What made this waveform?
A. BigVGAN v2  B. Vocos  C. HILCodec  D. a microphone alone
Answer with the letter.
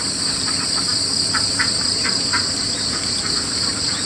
A